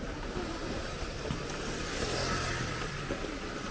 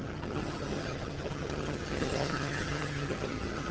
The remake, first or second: second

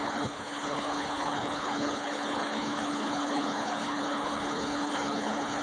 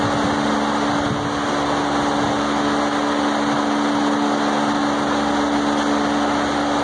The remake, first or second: first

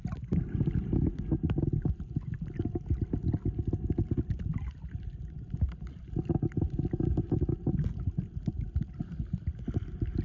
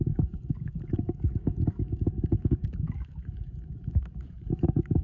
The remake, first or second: second